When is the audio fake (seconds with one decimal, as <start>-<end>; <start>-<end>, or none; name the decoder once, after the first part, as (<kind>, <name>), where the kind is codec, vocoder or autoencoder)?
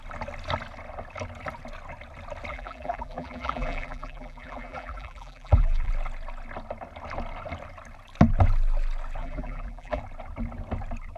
2.5-5.9 (vocoder, BigVGAN v2); 9.2-10.0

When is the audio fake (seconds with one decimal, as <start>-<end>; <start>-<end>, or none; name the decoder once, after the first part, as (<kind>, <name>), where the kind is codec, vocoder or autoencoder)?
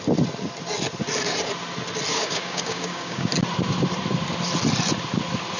2.1-3.3 (codec, DAC)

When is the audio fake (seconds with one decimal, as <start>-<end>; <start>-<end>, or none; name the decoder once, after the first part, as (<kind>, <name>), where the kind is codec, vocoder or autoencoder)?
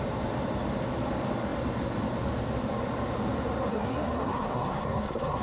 3.7-5.4 (codec, SNAC)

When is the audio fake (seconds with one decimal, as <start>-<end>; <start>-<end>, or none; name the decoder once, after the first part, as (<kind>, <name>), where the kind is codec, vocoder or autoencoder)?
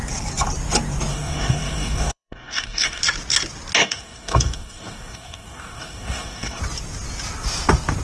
1.1-3.0 (codec, DAC); 3.8-6.6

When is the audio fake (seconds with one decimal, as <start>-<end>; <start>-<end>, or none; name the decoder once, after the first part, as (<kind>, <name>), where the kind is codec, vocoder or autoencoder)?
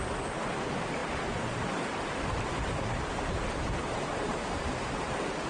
0.0-5.5 (vocoder, BigVGAN v2)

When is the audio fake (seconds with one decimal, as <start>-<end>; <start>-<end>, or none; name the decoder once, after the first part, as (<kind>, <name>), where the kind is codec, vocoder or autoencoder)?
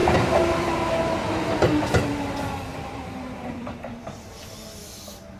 2.7-4.3 (vocoder, BigVGAN v2)